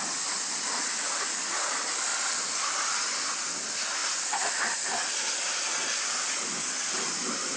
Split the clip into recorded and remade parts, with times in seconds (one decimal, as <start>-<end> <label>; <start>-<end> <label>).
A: 0.0-2.1 recorded; 2.1-3.5 remade; 3.5-4.0 recorded; 4.0-5.6 remade; 5.6-7.6 recorded